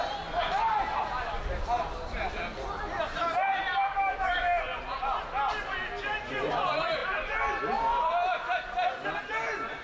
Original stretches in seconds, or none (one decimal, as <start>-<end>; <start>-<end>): 0.0-3.8; 4.6-9.8